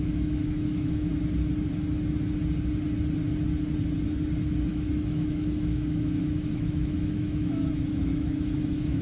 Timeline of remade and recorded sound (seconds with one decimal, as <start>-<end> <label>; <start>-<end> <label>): 0.0-1.1 remade; 1.1-4.7 recorded; 4.7-9.0 remade